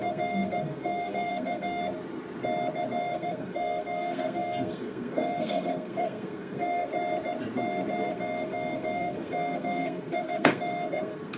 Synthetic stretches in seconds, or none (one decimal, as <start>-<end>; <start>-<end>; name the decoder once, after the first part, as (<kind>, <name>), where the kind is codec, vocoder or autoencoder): 0.0-1.8 (codec, SNAC); 3.0-6.9; 8.1-11.4